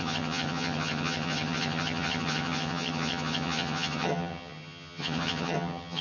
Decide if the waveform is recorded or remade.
remade